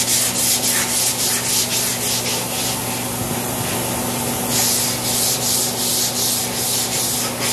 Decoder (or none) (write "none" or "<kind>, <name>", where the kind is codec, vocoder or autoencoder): none